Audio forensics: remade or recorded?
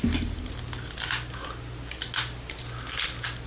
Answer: recorded